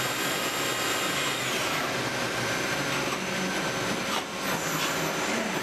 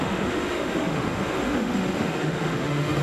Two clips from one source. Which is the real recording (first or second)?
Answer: first